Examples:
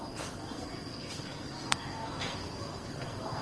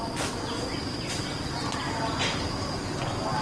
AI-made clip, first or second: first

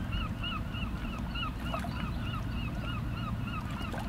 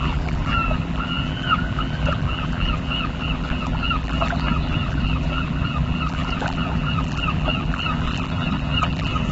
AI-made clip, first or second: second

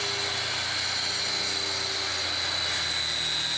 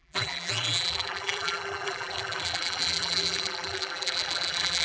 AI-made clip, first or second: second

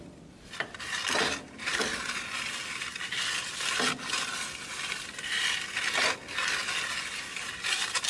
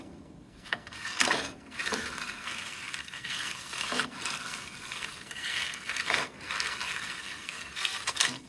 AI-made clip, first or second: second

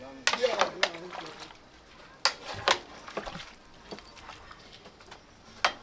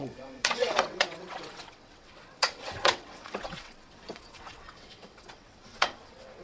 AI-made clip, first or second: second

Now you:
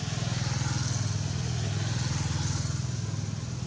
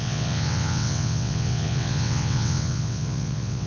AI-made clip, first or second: second